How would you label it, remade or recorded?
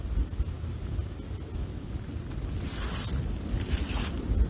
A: recorded